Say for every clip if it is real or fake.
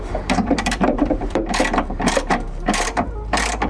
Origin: fake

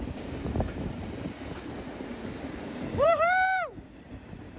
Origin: fake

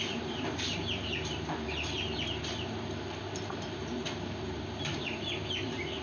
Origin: fake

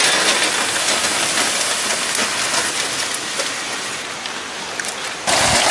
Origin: real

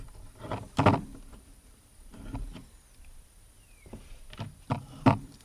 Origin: fake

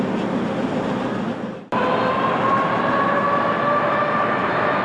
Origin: fake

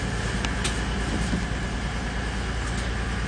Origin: real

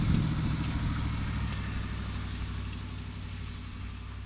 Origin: real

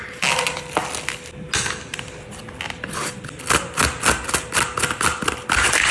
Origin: real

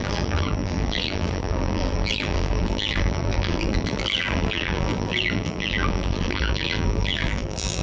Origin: fake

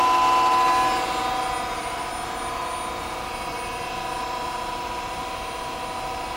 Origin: real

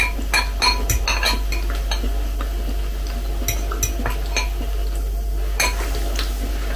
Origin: real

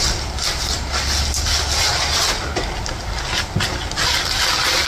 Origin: real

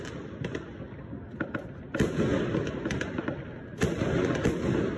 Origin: real